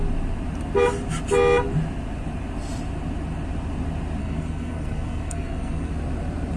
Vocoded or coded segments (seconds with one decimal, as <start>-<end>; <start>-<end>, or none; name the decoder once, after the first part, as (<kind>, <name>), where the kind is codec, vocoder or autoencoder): 4.2-5.9 (codec, SNAC)